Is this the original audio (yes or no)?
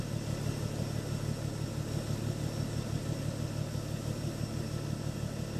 yes